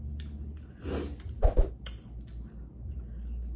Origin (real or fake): real